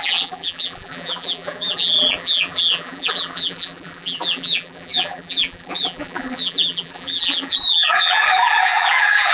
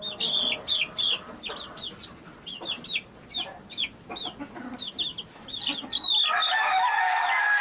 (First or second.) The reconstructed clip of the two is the first